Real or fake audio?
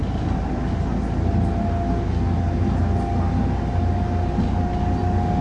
real